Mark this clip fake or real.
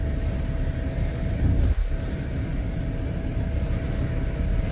real